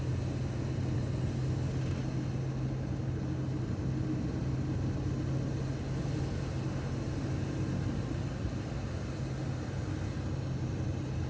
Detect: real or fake real